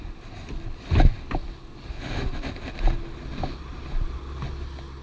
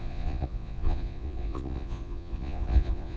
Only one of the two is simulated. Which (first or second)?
second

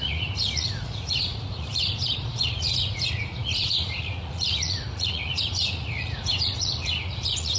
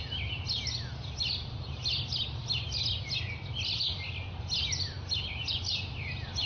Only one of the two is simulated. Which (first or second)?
first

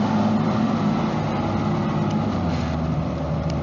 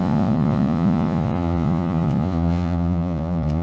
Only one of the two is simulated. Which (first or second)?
second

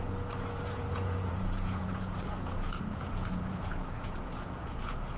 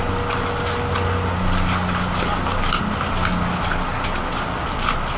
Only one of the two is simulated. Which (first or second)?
first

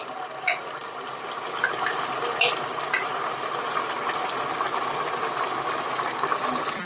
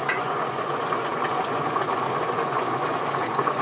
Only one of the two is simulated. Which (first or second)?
second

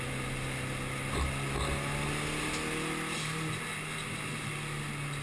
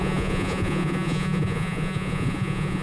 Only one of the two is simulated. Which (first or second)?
second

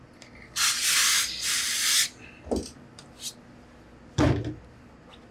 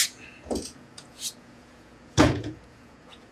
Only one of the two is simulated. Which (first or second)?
second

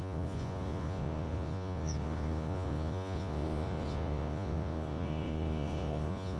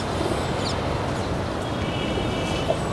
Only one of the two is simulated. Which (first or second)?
first